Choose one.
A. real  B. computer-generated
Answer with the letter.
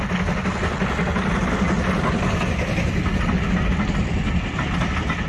A